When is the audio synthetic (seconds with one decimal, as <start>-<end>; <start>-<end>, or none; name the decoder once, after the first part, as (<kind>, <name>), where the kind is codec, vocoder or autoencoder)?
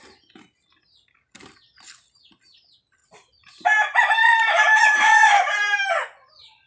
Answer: 3.0-5.8 (vocoder, BigVGAN v2)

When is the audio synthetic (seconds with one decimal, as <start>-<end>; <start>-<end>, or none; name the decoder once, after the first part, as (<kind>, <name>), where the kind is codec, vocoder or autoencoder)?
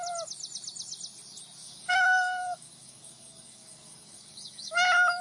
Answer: 1.6-4.7 (codec, DAC)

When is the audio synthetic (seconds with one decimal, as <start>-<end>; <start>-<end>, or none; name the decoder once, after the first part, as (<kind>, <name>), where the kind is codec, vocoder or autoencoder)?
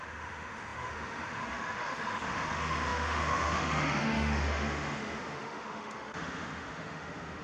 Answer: 0.0-7.4 (autoencoder, DAC-VAE)